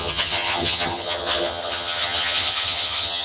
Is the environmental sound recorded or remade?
remade